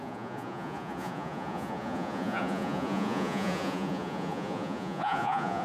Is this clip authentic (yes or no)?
no